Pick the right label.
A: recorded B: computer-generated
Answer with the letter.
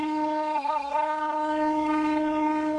B